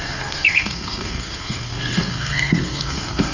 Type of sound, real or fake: fake